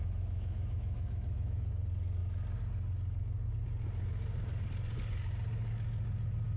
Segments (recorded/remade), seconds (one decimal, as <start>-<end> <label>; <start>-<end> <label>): 0.0-1.7 remade; 1.7-6.6 recorded